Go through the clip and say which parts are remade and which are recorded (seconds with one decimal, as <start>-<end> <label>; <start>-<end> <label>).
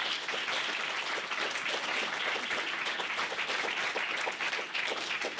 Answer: 0.0-5.4 recorded